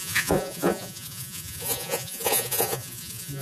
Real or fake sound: fake